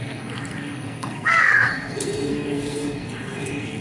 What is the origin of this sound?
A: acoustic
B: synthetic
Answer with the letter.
B